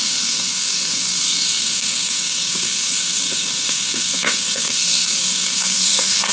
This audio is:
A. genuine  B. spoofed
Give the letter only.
B